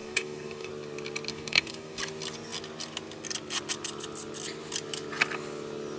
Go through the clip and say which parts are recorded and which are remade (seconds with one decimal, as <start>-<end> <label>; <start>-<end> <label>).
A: 0.0-0.7 remade; 0.7-1.3 recorded; 1.3-2.0 remade; 2.0-6.0 recorded